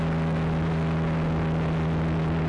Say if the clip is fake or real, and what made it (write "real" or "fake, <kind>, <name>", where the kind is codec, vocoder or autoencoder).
real